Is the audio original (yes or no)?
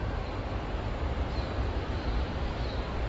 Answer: no